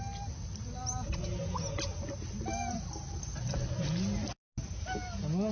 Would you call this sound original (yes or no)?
yes